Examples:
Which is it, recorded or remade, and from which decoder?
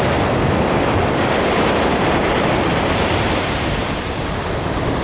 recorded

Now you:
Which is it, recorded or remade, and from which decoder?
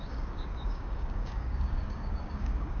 remade, codec, DAC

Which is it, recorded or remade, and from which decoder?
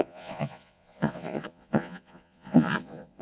remade, vocoder, Vocos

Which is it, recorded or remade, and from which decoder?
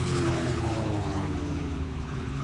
remade, codec, HILCodec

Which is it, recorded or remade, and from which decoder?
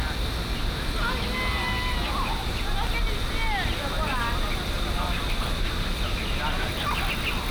recorded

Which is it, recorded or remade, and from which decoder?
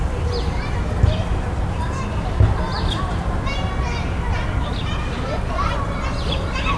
recorded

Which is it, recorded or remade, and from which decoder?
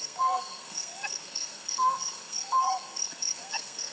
remade, codec, SNAC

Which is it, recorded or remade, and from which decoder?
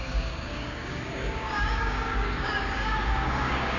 remade, codec, DAC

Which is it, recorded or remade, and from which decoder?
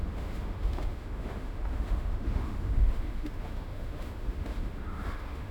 remade, autoencoder, DAC-VAE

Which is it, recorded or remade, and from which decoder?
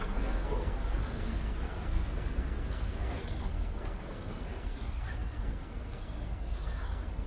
remade, codec, SNAC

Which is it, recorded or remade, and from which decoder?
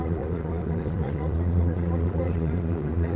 remade, vocoder, Vocos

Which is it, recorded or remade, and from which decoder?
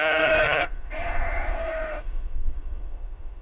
remade, autoencoder, DAC-VAE